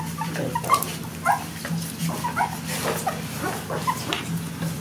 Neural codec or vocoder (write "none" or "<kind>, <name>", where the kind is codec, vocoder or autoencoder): none